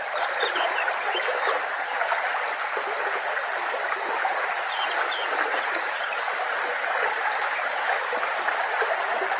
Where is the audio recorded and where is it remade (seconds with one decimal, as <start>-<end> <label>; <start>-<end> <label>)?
0.0-5.5 recorded; 5.5-6.0 remade; 6.0-9.4 recorded